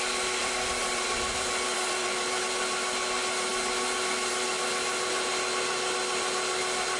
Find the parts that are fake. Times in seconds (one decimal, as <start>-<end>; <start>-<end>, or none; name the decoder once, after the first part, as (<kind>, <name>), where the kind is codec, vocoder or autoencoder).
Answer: 0.4-2.4 (vocoder, BigVGAN v2)